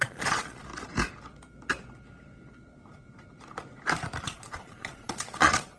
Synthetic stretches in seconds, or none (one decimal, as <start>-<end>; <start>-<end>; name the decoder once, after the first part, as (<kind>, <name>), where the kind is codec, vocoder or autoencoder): 0.0-0.7 (vocoder, Vocos); 4.2-5.8